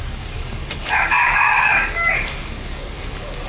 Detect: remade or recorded remade